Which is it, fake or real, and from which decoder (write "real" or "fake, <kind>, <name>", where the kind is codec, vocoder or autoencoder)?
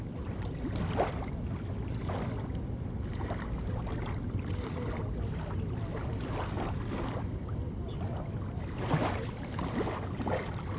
real